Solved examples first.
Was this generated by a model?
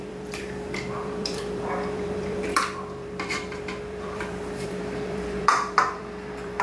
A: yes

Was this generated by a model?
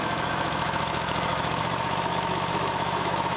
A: yes